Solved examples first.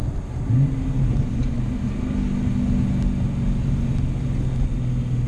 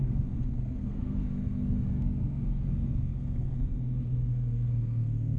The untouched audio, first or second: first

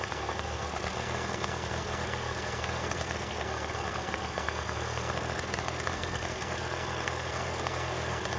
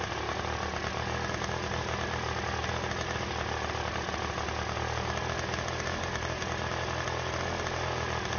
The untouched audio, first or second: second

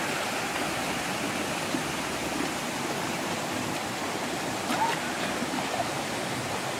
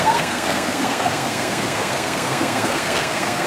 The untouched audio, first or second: first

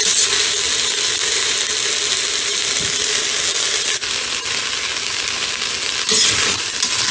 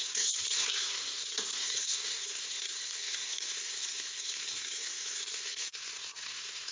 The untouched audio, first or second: first